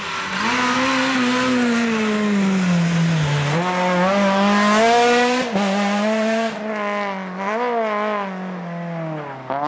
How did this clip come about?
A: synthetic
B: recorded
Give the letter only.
B